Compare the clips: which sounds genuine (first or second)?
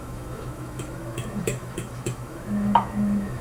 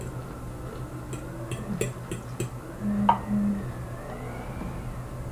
second